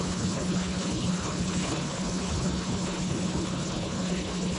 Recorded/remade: remade